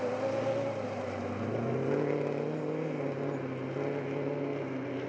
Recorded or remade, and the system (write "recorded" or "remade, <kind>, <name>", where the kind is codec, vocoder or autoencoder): recorded